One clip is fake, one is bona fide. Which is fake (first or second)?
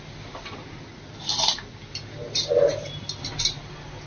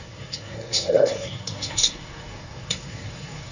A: second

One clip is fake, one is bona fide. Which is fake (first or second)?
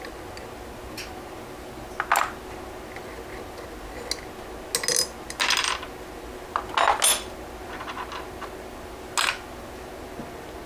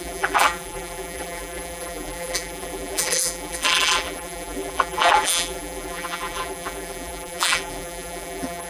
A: second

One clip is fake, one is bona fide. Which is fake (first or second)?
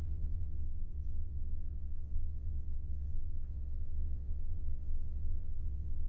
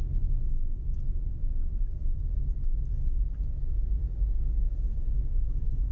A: first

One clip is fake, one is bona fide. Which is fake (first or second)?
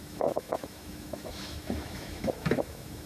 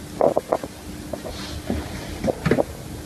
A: first